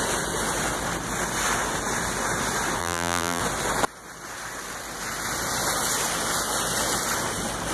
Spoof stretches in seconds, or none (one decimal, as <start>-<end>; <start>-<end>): 2.8-3.4